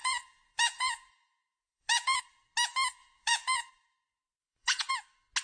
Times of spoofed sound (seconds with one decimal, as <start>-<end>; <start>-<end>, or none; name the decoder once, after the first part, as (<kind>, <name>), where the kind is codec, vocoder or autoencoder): 0.0-2.2 (vocoder, Vocos); 3.0-3.7; 4.4-4.9